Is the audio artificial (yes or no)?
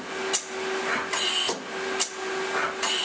no